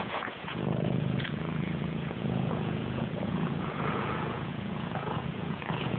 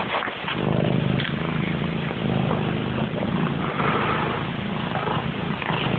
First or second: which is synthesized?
first